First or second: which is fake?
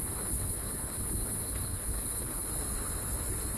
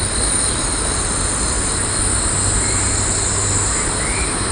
first